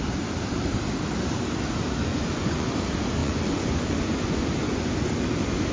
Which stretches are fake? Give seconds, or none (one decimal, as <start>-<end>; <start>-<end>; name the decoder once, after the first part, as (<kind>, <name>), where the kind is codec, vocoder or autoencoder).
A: 2.1-2.7 (vocoder, Vocos); 3.2-4.9

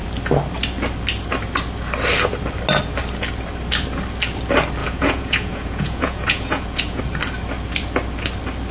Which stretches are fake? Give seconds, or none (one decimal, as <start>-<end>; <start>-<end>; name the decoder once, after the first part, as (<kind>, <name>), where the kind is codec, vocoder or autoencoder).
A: 4.8-7.0 (vocoder, Vocos)

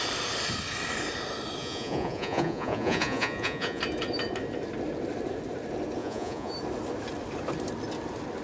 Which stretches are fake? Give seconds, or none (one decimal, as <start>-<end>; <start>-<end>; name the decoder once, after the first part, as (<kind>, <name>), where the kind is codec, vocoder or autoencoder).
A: 1.6-3.8 (vocoder, Vocos); 6.0-6.5

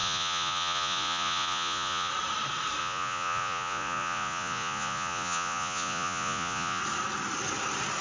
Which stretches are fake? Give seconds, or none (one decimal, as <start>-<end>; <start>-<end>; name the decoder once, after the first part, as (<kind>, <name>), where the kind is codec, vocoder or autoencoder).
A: 0.0-2.1 (vocoder, Vocos); 2.8-6.8

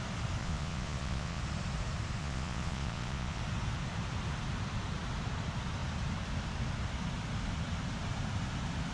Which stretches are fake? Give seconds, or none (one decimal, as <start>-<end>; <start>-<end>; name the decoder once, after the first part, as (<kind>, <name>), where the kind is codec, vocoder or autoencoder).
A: 0.4-1.4 (vocoder, Vocos); 2.2-3.4

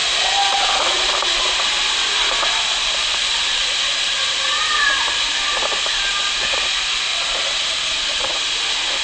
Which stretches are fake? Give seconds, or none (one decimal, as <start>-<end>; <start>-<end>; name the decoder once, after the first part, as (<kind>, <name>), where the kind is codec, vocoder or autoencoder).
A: 3.1-4.6 (vocoder, Vocos); 7.1-8.4